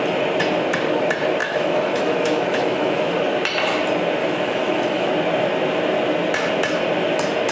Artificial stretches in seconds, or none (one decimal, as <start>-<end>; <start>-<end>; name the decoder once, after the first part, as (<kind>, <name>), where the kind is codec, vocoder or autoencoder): 1.4-3.1 (autoencoder, DAC-VAE); 4.2-5.1